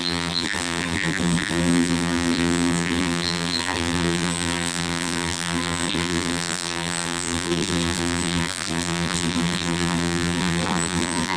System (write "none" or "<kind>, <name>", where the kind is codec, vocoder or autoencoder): vocoder, BigVGAN v2